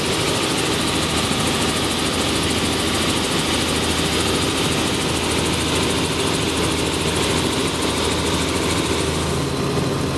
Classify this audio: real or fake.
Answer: real